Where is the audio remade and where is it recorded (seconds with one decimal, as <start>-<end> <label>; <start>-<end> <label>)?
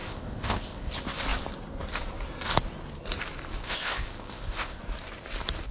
0.0-0.9 remade; 0.9-3.6 recorded; 3.6-4.8 remade; 4.8-5.7 recorded